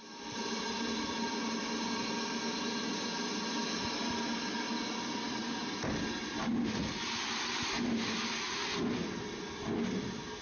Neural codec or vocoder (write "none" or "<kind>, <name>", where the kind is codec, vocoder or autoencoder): none